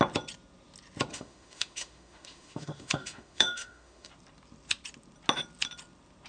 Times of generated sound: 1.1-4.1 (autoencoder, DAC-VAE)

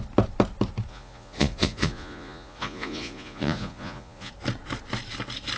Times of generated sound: 0.9-4.3 (vocoder, Vocos)

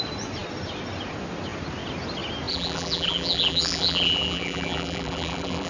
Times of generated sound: 2.5-5.7 (vocoder, BigVGAN v2)